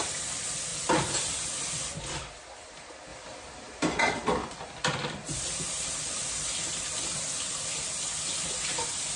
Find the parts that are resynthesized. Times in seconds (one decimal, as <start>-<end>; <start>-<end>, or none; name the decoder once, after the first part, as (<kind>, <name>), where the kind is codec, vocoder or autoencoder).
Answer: 0.7-2.0 (vocoder, BigVGAN v2); 4.4-8.7